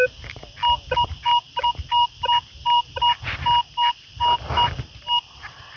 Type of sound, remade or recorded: recorded